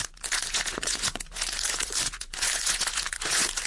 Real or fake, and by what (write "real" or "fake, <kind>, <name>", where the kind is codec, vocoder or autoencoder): fake, vocoder, Vocos